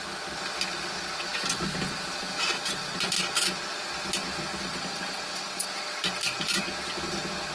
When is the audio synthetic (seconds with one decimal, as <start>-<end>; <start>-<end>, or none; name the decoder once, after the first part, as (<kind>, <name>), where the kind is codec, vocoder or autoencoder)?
none